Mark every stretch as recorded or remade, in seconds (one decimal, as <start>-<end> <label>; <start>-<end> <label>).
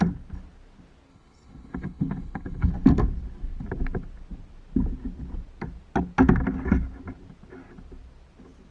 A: 0.0-1.1 recorded; 1.1-2.7 remade; 2.7-8.7 recorded